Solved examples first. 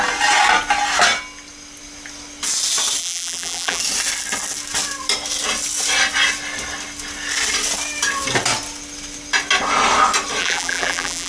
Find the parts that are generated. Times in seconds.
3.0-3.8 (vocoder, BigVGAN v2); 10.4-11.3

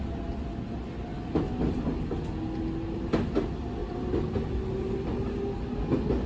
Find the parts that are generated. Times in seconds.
3.8-5.3 (vocoder, BigVGAN v2)

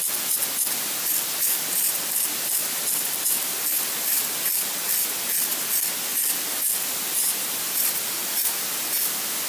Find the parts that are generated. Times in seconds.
none

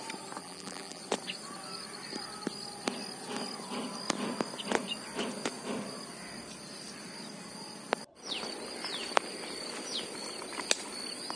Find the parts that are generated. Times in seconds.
0.4-1.0 (vocoder, BigVGAN v2)

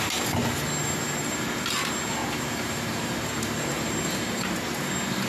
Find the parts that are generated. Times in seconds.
0.8-1.7 (vocoder, BigVGAN v2); 2.2-5.3

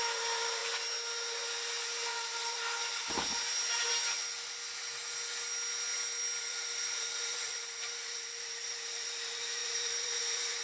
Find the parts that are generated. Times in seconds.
0.0-0.6 (vocoder, BigVGAN v2); 2.1-3.0; 6.4-10.6

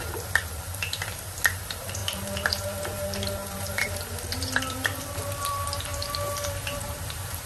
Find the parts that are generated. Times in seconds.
0.0-7.5 (vocoder, BigVGAN v2)